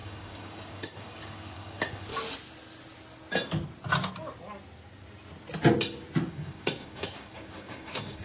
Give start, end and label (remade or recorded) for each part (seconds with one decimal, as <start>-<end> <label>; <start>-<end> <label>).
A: 0.0-2.1 remade; 2.1-6.3 recorded; 6.3-8.2 remade